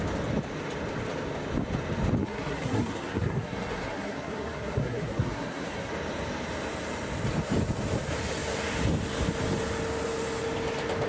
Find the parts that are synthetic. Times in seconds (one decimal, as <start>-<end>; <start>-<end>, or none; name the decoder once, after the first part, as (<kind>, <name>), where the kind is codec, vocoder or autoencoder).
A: 2.2-5.9 (codec, SNAC)

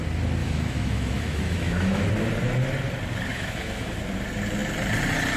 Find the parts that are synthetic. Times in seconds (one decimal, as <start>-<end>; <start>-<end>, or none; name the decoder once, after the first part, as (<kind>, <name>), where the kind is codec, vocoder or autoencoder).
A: 0.4-2.1 (autoencoder, DAC-VAE); 3.3-4.0

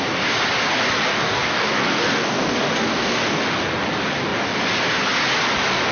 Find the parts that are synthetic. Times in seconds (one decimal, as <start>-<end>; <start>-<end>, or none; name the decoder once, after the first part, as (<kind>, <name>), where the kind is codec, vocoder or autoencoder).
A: 1.1-3.4 (codec, DAC)

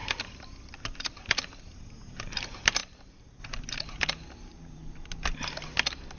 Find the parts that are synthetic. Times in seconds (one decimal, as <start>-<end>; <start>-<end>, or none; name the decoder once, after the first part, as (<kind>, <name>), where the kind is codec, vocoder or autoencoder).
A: 2.8-3.4 (vocoder, BigVGAN v2); 4.5-5.1

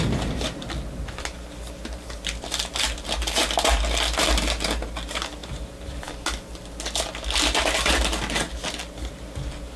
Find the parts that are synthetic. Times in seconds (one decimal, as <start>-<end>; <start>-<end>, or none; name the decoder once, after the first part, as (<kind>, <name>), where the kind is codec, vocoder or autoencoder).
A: none

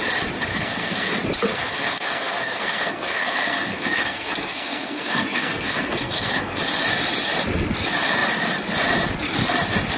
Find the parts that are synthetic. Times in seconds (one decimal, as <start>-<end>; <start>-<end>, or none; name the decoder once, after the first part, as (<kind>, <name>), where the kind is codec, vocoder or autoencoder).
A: 0.5-1.1 (codec, SNAC); 1.5-6.6

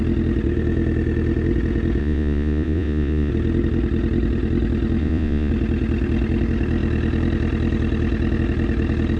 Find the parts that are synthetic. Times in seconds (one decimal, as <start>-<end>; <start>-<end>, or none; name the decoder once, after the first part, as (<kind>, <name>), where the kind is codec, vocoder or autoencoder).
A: 2.0-3.3 (vocoder, Vocos); 5.0-5.5

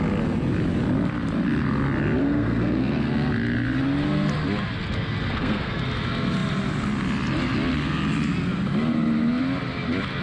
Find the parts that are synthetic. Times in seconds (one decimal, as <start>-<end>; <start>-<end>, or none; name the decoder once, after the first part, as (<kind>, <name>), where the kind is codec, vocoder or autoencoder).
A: 2.2-3.1 (codec, SNAC); 4.8-5.8